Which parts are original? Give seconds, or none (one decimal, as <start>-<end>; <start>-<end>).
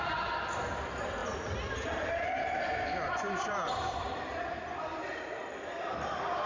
0.0-1.2; 4.4-4.9; 6.1-6.5